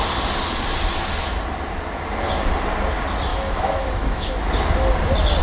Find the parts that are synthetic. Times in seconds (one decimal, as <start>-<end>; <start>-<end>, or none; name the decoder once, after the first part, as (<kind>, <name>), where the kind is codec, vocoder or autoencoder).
3.3-4.3 (autoencoder, DAC-VAE)